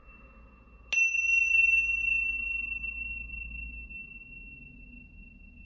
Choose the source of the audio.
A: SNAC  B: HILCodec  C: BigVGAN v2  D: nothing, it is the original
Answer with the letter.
D